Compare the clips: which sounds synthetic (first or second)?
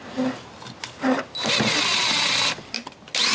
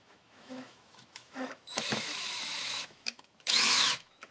second